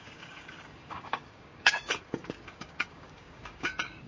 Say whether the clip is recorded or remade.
remade